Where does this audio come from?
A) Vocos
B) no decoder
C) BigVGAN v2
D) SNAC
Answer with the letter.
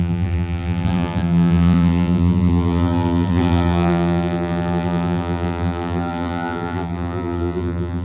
C